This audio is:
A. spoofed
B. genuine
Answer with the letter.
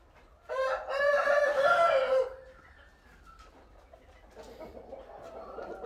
B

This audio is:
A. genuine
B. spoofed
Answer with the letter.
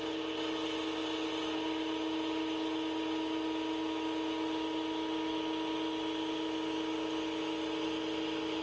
A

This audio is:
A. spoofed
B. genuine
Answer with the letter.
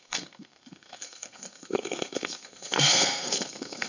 A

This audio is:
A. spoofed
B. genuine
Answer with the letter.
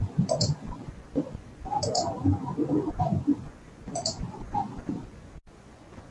A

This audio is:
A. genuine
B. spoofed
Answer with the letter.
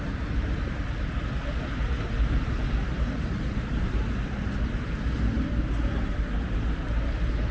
A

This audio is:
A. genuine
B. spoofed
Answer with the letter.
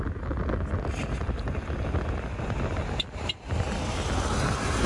A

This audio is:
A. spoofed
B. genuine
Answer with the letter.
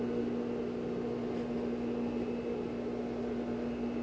B